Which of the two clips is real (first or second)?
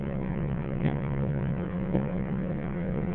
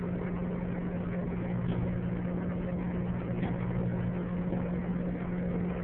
second